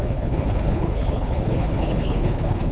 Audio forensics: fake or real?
fake